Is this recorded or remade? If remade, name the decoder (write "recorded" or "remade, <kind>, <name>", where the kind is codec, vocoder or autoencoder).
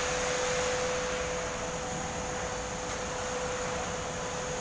recorded